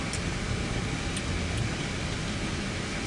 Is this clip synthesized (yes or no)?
no